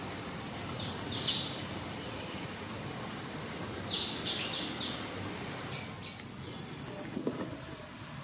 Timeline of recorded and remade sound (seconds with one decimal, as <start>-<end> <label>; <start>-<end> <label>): 0.0-8.2 recorded